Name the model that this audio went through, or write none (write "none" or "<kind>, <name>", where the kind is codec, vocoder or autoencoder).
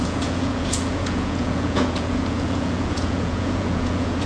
vocoder, Vocos